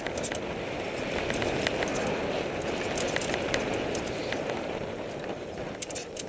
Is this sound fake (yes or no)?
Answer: no